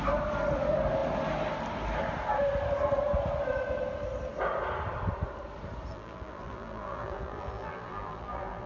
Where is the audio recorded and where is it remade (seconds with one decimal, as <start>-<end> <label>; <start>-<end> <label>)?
0.0-5.9 recorded; 5.9-8.7 remade